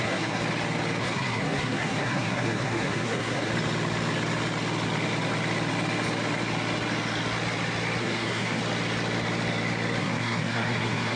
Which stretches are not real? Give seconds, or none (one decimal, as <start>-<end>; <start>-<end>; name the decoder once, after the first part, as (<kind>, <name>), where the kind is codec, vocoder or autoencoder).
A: 0.0-0.4 (codec, SNAC); 1.0-3.5; 8.0-8.6; 10.0-11.2

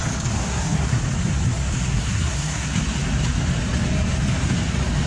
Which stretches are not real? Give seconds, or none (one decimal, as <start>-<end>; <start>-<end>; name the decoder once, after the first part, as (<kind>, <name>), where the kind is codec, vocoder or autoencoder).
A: 0.4-1.0 (codec, SNAC); 1.9-2.8